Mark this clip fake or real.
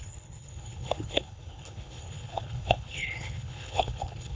fake